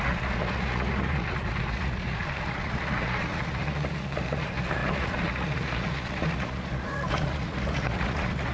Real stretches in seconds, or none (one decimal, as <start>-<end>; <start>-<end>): none